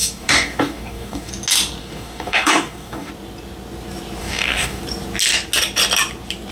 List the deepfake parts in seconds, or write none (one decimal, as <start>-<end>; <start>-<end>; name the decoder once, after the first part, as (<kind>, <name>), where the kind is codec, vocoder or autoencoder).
0.0-1.3 (codec, DAC); 1.8-3.1; 4.2-4.8